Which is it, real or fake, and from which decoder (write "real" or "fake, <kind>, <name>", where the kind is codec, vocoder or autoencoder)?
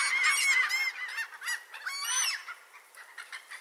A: real